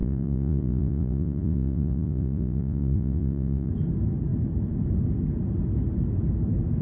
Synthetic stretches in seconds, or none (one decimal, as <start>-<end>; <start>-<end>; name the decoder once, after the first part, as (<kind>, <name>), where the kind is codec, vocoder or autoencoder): 0.0-3.7 (vocoder, Vocos)